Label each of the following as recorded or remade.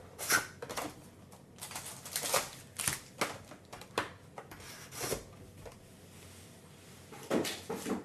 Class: recorded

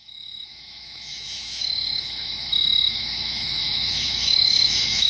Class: remade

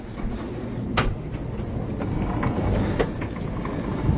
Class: recorded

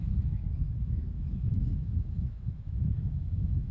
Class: remade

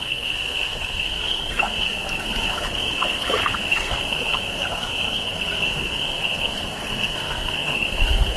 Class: remade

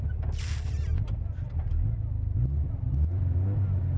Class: recorded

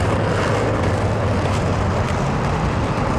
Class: recorded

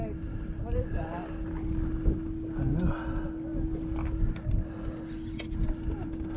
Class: recorded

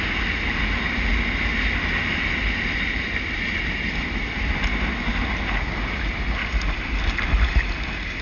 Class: recorded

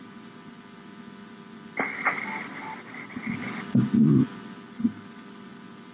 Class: recorded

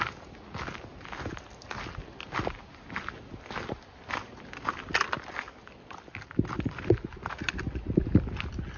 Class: recorded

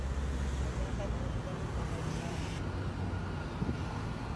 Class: recorded